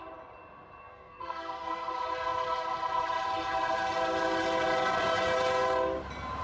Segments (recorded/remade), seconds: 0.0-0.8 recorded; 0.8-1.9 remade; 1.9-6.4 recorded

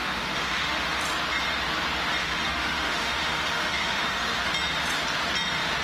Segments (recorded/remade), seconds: 0.0-1.0 remade; 1.0-2.2 recorded; 2.2-4.5 remade; 4.5-5.8 recorded

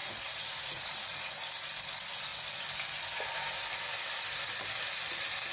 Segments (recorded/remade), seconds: 0.0-1.3 remade; 1.3-5.5 recorded

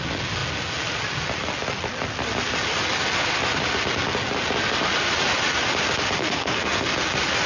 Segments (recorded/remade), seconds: 0.0-6.2 recorded; 6.2-6.9 remade; 6.9-7.5 recorded